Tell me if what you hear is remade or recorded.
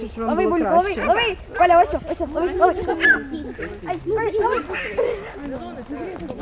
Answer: recorded